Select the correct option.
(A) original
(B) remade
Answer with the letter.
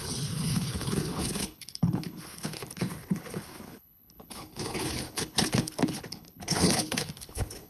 B